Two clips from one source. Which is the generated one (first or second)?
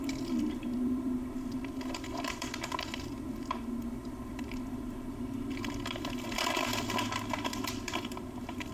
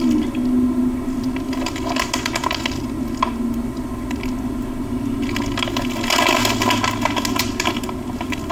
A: first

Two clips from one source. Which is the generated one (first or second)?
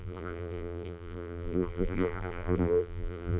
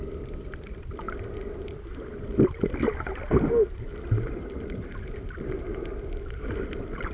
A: first